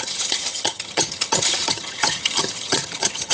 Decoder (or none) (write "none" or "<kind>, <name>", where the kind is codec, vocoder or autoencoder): vocoder, HiFi-GAN